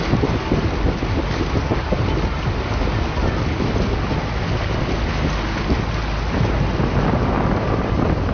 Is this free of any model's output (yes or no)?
yes